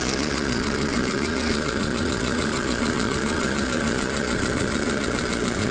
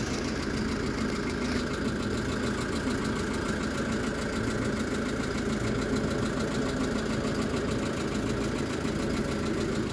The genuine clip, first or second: second